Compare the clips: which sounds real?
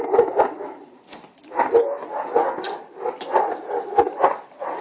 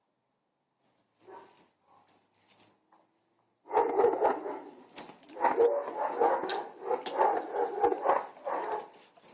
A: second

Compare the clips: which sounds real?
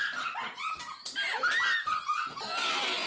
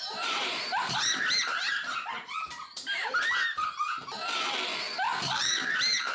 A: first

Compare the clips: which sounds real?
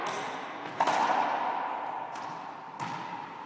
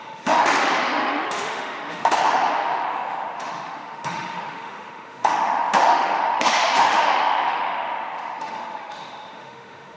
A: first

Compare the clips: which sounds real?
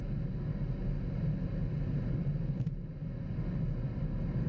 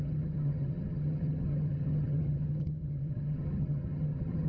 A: first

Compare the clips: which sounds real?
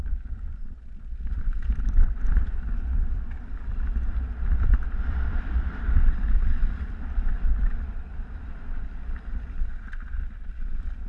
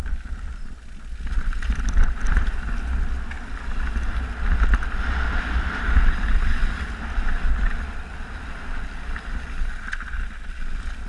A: second